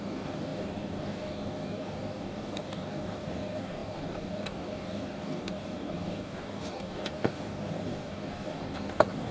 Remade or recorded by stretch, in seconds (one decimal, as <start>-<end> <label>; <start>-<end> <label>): 0.0-9.3 remade